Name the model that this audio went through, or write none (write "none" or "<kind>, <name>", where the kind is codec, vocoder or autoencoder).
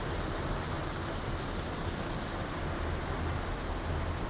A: none